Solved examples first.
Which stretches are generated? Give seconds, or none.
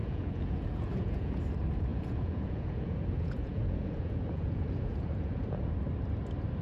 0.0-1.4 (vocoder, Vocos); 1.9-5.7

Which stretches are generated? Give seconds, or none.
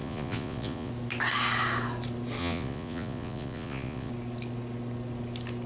0.0-0.9 (vocoder, Vocos); 2.4-4.1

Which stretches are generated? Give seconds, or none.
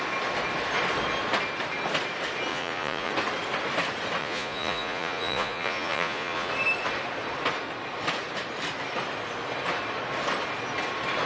2.5-3.1 (vocoder, Vocos); 4.2-6.5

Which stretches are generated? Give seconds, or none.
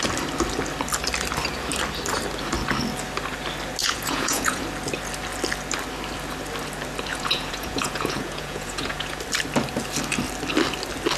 3.8-4.6 (vocoder, Vocos); 7.1-9.2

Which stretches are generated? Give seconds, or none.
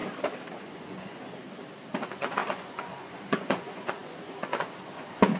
0.6-1.4 (vocoder, Vocos); 2.0-5.4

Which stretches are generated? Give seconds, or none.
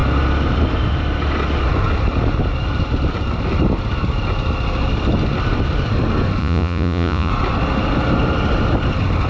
6.4-7.3 (vocoder, Vocos)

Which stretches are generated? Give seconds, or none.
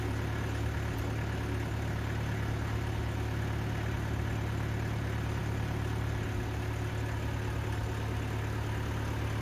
none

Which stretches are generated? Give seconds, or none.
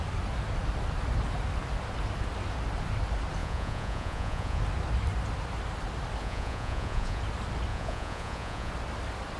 3.4-4.6 (vocoder, Vocos); 6.2-7.2; 7.7-8.7